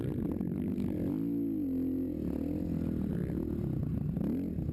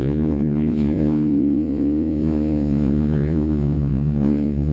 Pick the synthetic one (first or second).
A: second